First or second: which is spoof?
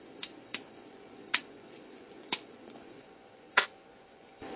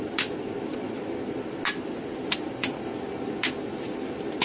first